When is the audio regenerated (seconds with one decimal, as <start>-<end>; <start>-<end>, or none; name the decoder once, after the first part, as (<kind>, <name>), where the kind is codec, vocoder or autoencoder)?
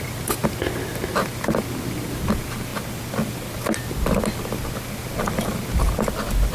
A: none